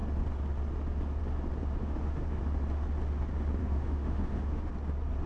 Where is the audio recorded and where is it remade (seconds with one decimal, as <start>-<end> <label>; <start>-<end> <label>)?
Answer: 0.0-1.8 recorded; 1.8-2.4 remade; 2.4-3.6 recorded; 3.6-4.7 remade; 4.7-5.3 recorded